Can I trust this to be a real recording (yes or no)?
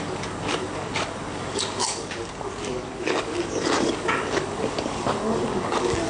no